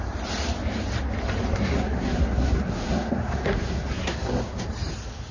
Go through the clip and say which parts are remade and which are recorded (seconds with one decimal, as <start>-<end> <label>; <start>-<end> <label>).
0.0-1.5 recorded; 1.5-4.7 remade; 4.7-5.3 recorded

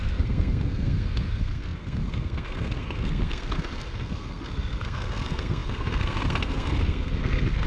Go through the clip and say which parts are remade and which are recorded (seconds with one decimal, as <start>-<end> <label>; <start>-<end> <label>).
0.0-7.7 remade

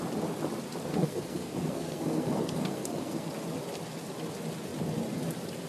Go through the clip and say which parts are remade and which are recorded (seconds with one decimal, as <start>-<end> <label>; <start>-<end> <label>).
0.0-0.9 recorded; 0.9-3.3 remade; 3.3-5.7 recorded

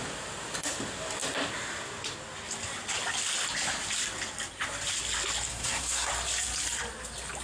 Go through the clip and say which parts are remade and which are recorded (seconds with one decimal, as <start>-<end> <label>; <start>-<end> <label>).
0.0-5.5 recorded; 5.5-6.1 remade; 6.1-7.4 recorded